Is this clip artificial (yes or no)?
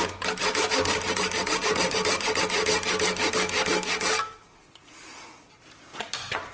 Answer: no